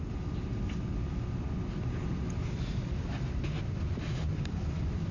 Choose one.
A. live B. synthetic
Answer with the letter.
A